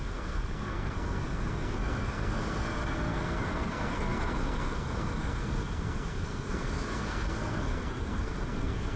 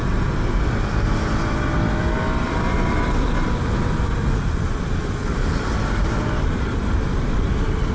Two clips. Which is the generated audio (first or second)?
first